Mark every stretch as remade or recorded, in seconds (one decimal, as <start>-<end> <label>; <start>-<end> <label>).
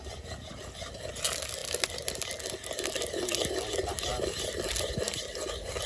0.0-4.1 recorded; 4.1-5.2 remade; 5.2-5.9 recorded